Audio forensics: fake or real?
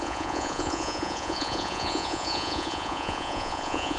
fake